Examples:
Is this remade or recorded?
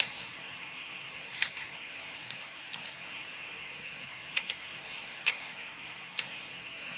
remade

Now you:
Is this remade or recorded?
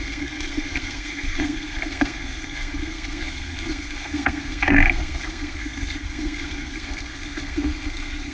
remade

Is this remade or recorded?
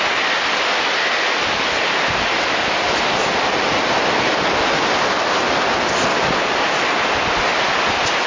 recorded